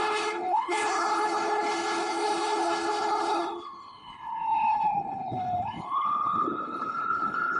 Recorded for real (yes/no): no